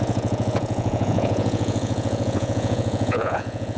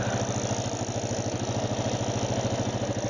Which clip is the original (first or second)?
second